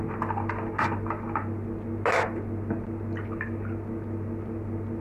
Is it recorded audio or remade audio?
recorded